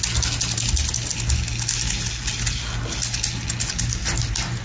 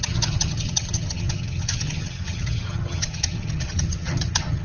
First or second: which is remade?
second